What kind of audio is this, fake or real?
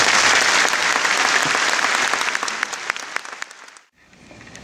real